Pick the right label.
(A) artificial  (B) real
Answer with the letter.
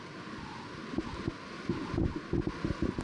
B